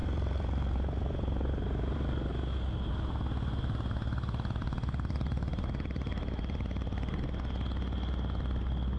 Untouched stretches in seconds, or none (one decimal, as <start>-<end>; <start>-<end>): 2.3-4.6; 7.2-9.0